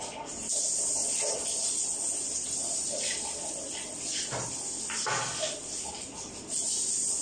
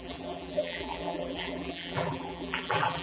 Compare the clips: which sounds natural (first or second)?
first